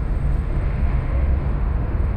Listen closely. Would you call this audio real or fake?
fake